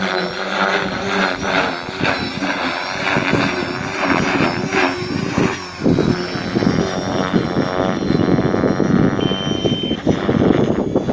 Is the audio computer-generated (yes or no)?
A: no